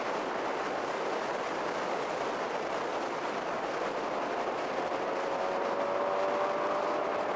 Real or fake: real